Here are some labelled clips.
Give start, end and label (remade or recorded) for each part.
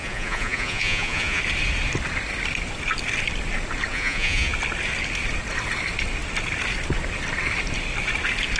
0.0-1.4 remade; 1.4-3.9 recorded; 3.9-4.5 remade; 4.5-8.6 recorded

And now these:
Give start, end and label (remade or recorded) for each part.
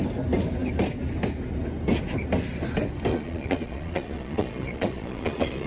0.0-3.1 recorded; 3.1-5.7 remade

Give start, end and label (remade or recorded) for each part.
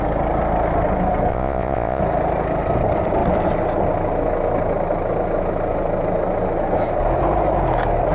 0.0-1.3 recorded; 1.3-2.0 remade; 2.0-8.1 recorded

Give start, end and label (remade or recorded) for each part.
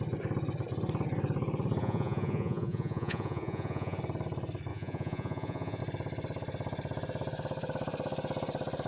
0.0-1.8 recorded; 1.8-4.0 remade; 4.0-4.7 recorded; 4.7-5.8 remade; 5.8-8.9 recorded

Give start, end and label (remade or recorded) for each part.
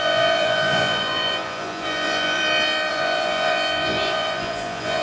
0.0-2.4 remade; 2.4-2.9 recorded; 2.9-5.0 remade